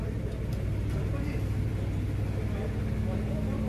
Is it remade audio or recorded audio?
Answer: recorded